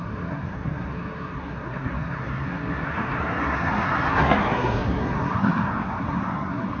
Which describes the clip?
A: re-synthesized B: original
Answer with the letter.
A